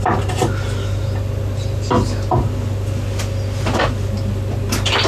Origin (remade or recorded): recorded